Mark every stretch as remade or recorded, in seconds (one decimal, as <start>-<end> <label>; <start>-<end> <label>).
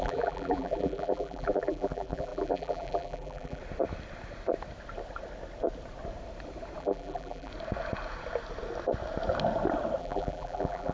0.0-3.6 remade; 3.6-6.8 recorded; 6.8-7.5 remade; 7.5-10.0 recorded; 10.0-10.9 remade